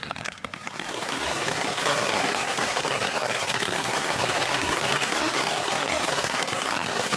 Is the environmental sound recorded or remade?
remade